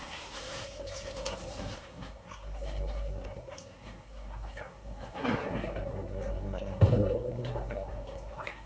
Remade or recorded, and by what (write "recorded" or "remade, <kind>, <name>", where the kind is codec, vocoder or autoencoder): remade, codec, SNAC